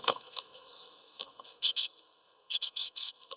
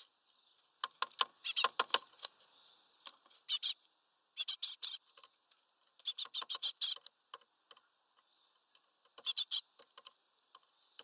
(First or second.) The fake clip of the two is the first